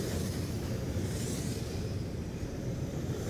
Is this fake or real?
fake